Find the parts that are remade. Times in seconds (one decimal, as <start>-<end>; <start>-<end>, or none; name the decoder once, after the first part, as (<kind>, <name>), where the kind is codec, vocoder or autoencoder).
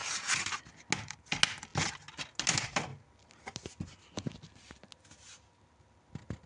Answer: none